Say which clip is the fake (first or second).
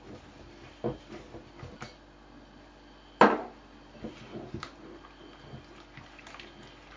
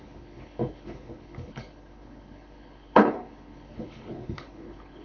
second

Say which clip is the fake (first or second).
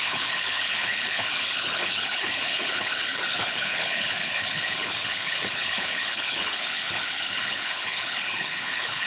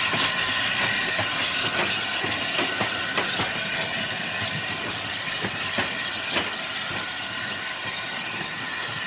first